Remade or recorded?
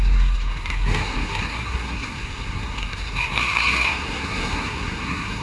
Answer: remade